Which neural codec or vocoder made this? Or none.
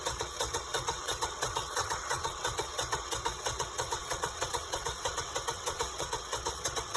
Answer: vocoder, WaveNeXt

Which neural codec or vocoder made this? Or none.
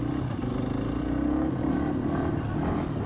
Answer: none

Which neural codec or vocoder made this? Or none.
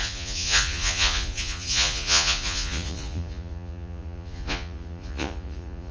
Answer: vocoder, Vocos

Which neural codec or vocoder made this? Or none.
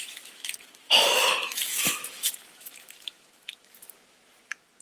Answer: autoencoder, DAC-VAE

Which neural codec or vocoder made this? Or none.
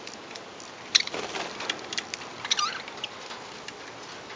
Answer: none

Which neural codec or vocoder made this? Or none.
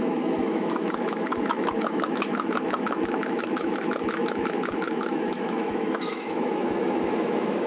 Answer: autoencoder, DAC-VAE